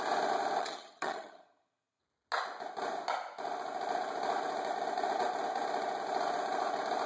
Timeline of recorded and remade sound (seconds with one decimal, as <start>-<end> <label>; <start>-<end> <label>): 0.0-0.6 recorded; 0.6-2.0 remade; 2.0-7.1 recorded